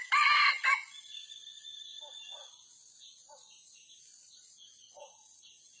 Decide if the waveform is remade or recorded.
recorded